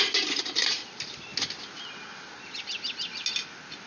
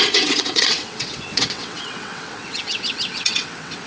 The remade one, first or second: second